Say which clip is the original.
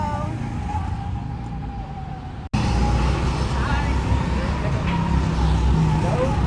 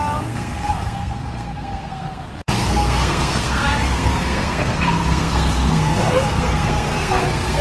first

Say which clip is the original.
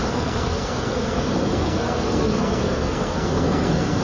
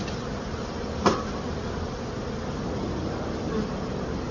second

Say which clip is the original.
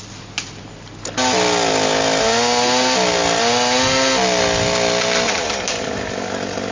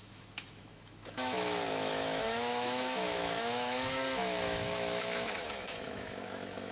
first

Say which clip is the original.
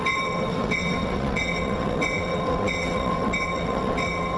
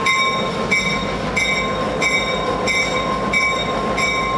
second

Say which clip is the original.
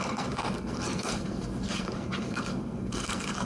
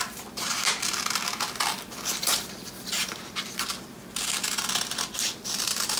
second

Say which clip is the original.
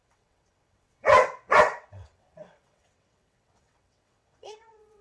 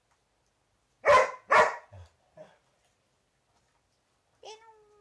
second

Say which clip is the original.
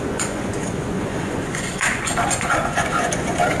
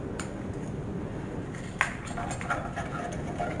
second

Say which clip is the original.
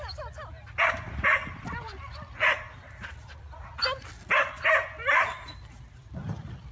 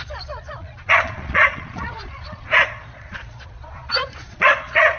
first